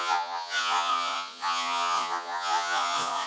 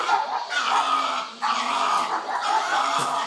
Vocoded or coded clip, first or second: first